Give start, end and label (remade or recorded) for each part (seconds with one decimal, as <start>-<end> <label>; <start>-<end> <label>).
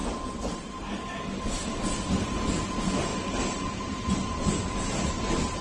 0.0-5.6 recorded